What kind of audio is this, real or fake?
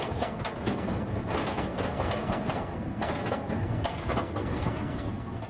fake